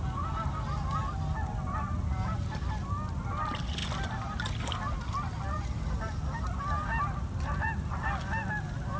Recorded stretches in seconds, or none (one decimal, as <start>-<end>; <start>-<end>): 0.0-9.0